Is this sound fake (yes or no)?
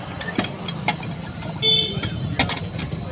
no